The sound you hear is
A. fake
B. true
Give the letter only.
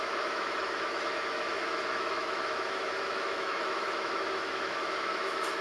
A